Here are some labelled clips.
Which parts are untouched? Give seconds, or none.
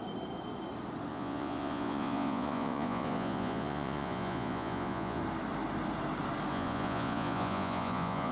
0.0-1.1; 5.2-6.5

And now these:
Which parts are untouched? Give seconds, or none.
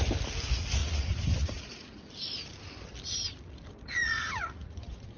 0.0-0.8; 2.1-4.0